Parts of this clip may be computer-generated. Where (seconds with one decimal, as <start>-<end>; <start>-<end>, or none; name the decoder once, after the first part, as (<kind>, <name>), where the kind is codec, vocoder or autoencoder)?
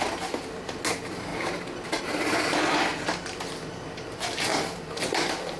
2.9-3.5 (vocoder, BigVGAN v2); 4.5-5.6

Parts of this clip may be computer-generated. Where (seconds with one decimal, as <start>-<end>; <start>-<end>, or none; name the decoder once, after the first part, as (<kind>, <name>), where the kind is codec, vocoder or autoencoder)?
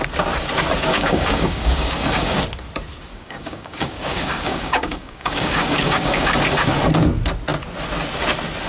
0.9-2.4 (codec, DAC); 3.1-6.3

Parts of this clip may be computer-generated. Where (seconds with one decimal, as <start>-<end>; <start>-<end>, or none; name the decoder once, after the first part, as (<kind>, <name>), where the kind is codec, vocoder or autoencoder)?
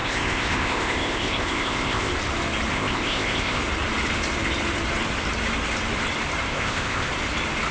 0.0-2.1 (codec, ZipCodec); 2.7-3.6; 6.5-7.1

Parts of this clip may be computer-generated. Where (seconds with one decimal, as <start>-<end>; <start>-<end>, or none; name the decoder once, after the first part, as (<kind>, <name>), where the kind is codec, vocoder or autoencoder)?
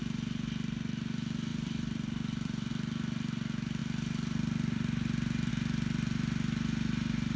1.5-2.7 (vocoder, BigVGAN v2); 3.8-5.5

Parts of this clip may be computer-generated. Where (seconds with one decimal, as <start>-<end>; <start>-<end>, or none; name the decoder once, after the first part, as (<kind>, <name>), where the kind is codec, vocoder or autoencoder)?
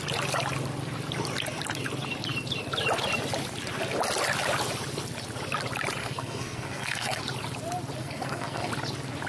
6.0-7.2 (codec, SNAC); 8.0-8.7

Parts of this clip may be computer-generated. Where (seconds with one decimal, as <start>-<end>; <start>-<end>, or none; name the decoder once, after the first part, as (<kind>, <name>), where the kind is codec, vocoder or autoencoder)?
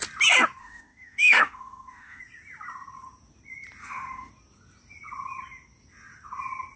0.6-2.2 (autoencoder, DAC-VAE); 3.8-4.3